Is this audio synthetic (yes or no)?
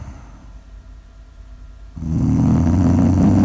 no